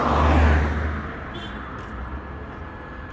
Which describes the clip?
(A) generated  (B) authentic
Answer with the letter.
B